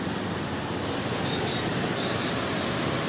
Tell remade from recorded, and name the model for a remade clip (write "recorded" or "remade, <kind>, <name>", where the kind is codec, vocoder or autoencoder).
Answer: recorded